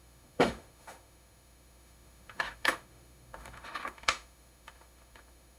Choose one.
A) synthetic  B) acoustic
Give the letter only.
A